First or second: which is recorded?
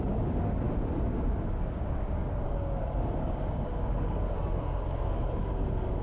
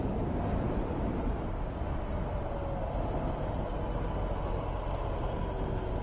second